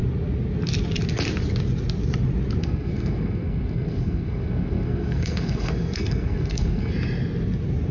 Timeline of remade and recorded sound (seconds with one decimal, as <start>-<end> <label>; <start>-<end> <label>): 0.0-2.6 recorded; 2.6-6.9 remade; 6.9-7.9 recorded